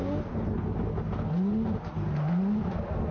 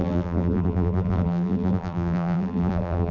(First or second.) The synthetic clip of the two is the second